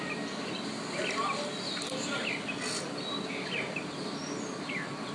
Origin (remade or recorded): recorded